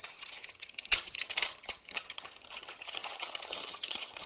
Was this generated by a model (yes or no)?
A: yes